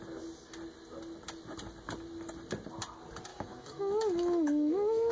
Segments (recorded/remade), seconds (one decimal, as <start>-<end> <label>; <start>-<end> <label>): 0.0-3.3 recorded; 3.3-5.1 remade